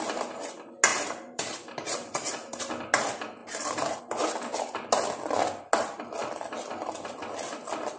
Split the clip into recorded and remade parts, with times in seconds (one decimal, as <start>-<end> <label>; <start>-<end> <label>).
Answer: 0.0-0.9 recorded; 0.9-2.6 remade; 2.6-3.4 recorded; 3.4-4.0 remade; 4.0-8.0 recorded